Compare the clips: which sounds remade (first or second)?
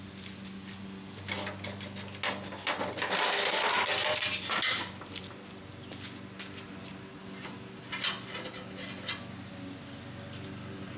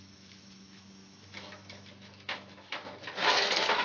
second